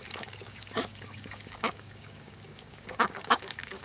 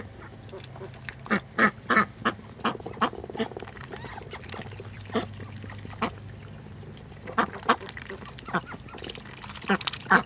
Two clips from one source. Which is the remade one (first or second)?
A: first